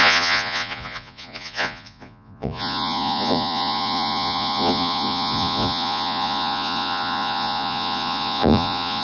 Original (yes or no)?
no